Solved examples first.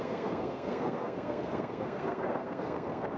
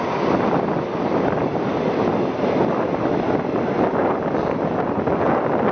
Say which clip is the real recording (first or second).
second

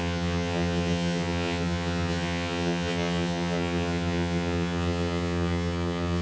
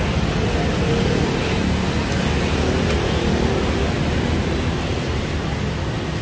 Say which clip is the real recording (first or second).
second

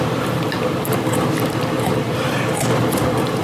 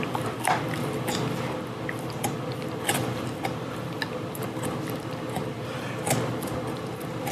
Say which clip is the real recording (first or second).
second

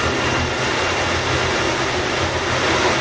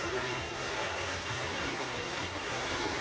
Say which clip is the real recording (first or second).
first